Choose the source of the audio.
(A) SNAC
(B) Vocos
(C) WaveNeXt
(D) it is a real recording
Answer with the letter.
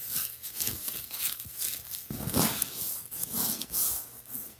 A